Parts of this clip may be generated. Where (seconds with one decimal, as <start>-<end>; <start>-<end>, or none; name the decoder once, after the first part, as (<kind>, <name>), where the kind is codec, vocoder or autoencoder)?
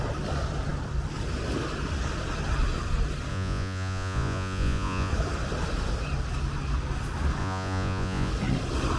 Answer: 3.3-5.1 (vocoder, Vocos); 7.4-8.3